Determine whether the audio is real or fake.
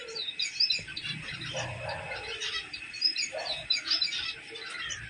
fake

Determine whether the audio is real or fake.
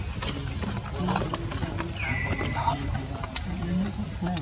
real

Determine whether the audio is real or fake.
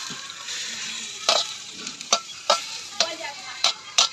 fake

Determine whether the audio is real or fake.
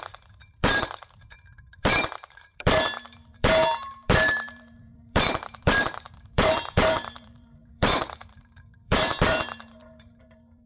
fake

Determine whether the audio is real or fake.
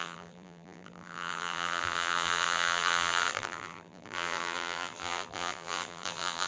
fake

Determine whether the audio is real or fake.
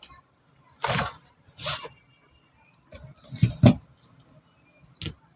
real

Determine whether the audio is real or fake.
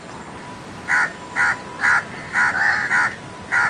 fake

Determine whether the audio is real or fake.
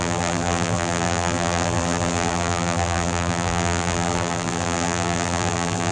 fake